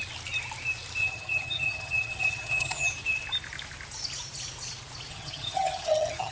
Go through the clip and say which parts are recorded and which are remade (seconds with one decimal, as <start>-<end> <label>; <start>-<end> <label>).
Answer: 0.0-1.0 recorded; 1.0-2.9 remade; 2.9-5.1 recorded; 5.1-6.3 remade